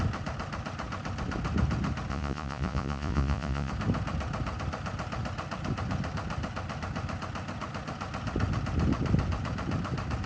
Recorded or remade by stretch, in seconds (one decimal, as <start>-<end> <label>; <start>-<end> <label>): 0.0-2.1 recorded; 2.1-3.7 remade; 3.7-10.3 recorded